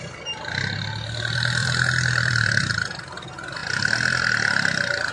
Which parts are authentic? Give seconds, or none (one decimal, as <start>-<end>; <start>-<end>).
0.0-1.6; 2.7-5.1